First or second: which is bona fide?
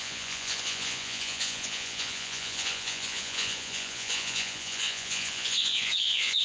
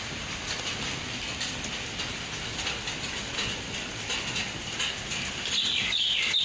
second